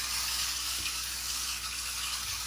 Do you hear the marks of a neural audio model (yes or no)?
yes